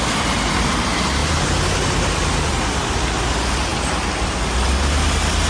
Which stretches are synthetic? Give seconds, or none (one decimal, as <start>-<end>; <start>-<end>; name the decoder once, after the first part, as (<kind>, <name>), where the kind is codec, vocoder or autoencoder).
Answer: none